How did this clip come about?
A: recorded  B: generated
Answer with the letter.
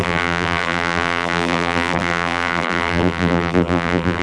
B